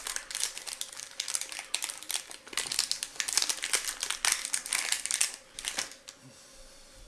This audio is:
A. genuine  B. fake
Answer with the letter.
A